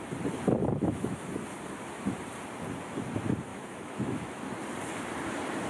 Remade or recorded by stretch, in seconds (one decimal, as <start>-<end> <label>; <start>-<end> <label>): 0.0-0.6 recorded; 0.6-1.3 remade; 1.3-3.5 recorded; 3.5-4.4 remade; 4.4-5.7 recorded